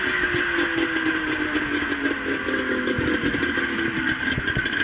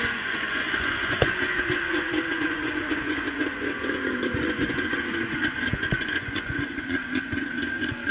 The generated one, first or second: second